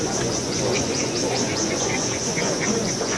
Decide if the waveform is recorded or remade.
remade